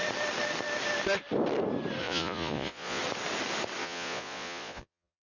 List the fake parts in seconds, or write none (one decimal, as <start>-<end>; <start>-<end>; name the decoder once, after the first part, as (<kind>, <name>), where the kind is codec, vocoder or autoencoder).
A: 2.0-3.0 (vocoder, Vocos); 3.8-5.2